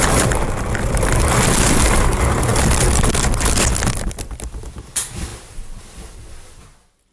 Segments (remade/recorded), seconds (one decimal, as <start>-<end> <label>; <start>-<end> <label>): 0.0-7.1 recorded